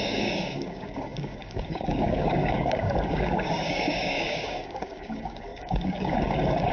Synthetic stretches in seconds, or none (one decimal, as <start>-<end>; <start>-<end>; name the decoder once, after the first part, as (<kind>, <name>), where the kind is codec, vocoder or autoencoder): 0.0-6.7 (codec, DAC)